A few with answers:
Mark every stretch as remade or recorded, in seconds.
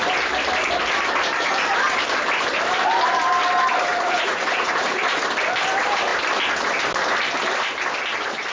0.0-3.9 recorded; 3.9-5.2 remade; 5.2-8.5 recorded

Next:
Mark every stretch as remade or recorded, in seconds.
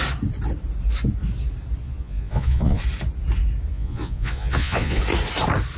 0.0-1.8 recorded; 1.8-2.8 remade; 2.8-3.7 recorded; 3.7-5.0 remade; 5.0-5.8 recorded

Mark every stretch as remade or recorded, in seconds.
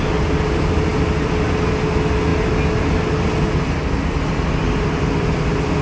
0.0-5.8 recorded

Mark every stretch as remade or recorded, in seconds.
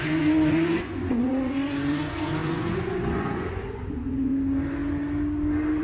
0.0-4.3 remade; 4.3-5.8 recorded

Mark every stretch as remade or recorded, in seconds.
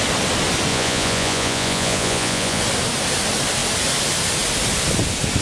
0.0-0.7 recorded; 0.7-2.6 remade; 2.6-5.4 recorded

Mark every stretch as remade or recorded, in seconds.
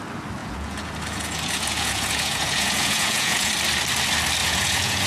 0.0-0.4 recorded; 0.4-3.5 remade; 3.5-4.4 recorded; 4.4-5.1 remade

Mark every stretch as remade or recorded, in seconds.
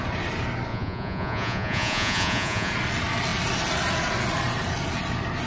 0.0-0.7 recorded; 0.7-2.7 remade; 2.7-5.5 recorded